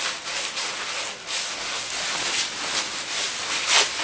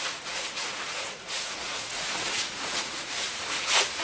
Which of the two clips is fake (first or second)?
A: second